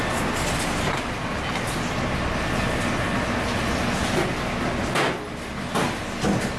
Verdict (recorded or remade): recorded